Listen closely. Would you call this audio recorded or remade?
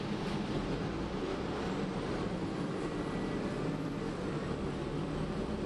recorded